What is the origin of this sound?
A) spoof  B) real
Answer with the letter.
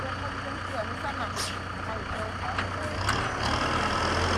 B